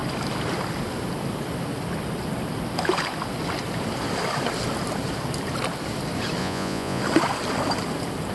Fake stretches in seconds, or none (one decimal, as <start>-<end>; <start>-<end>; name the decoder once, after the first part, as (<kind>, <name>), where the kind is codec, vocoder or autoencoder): 6.4-7.0 (vocoder, Vocos)